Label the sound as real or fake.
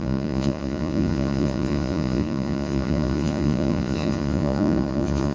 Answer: fake